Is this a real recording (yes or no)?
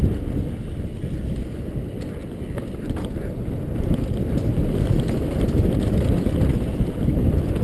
yes